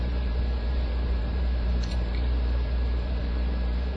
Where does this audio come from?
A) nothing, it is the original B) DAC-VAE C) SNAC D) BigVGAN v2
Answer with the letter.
D